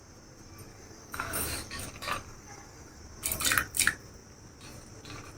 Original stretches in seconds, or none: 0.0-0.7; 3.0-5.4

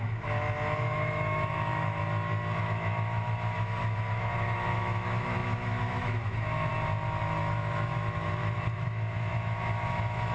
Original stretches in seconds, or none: 2.0-2.6; 6.7-7.2